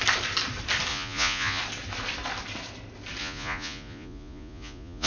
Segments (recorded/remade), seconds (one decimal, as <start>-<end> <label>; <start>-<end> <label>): 0.0-0.9 recorded; 0.9-1.6 remade; 1.6-3.2 recorded; 3.2-5.1 remade